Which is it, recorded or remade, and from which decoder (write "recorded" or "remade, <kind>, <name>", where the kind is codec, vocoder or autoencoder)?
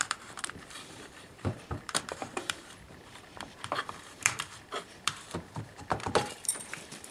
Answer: remade, vocoder, BigVGAN v2